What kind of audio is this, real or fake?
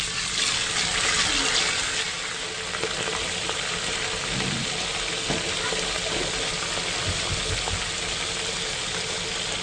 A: real